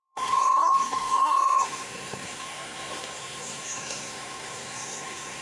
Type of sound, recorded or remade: remade